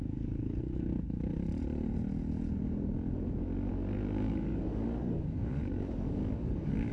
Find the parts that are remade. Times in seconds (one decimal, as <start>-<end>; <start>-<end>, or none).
0.0-1.3; 3.7-6.9